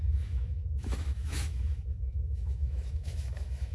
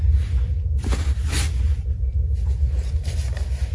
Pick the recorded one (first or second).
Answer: second